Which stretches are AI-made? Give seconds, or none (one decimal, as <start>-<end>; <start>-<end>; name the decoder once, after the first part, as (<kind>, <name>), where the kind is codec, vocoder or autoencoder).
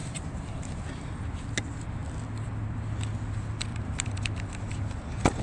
0.0-0.8 (vocoder, BigVGAN v2); 3.7-5.4